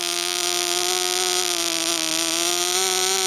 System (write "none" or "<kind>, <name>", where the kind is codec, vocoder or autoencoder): none